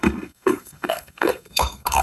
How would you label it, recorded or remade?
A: remade